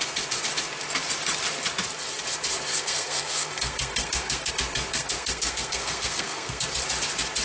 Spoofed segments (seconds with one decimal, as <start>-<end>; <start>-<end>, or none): 2.7-4.5; 4.9-6.6